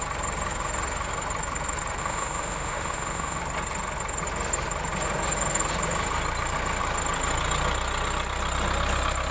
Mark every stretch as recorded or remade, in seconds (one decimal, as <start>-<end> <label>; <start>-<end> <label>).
0.0-2.0 recorded; 2.0-3.4 remade; 3.4-9.3 recorded